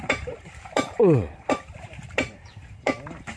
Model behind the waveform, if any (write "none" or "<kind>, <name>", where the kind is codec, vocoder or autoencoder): vocoder, BigVGAN v2